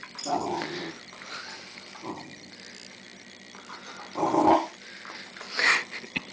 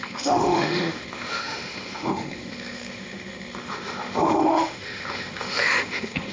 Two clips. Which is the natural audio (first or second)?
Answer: first